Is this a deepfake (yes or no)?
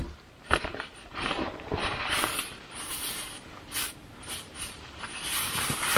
yes